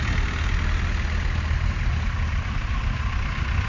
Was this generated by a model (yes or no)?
no